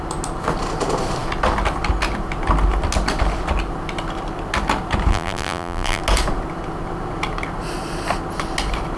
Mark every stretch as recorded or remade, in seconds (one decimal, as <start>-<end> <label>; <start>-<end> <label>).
0.0-5.1 recorded; 5.1-6.0 remade; 6.0-9.0 recorded

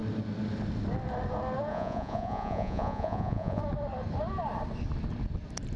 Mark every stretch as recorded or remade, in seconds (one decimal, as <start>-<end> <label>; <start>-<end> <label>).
0.0-1.7 recorded; 1.7-3.6 remade; 3.6-5.8 recorded

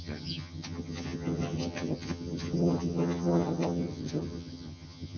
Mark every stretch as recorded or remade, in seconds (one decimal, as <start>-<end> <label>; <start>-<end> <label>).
0.0-5.2 remade

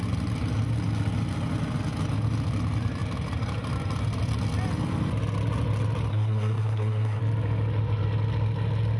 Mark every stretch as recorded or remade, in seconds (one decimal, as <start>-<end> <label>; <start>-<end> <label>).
0.0-6.1 recorded; 6.1-7.2 remade; 7.2-9.0 recorded

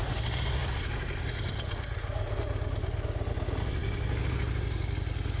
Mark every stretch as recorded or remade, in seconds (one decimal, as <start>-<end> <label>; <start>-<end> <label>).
0.0-5.4 recorded

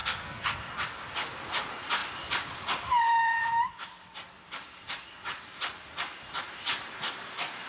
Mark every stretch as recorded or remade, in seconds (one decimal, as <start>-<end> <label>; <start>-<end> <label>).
0.0-0.6 remade; 0.6-7.7 recorded

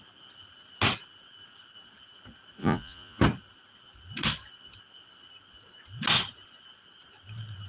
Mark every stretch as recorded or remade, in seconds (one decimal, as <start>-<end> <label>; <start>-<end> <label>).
0.0-2.6 recorded; 2.6-3.2 remade; 3.2-7.7 recorded